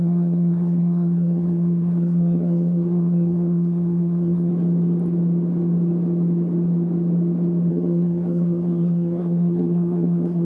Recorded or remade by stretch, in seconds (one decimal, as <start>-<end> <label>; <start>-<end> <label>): 0.0-4.5 remade; 4.5-7.7 recorded; 7.7-10.4 remade